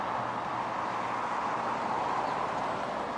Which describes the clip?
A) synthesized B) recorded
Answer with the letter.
B